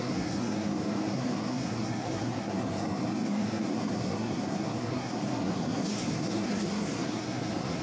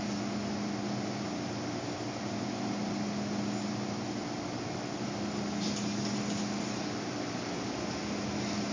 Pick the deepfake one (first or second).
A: first